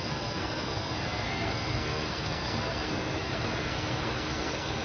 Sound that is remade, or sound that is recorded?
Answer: remade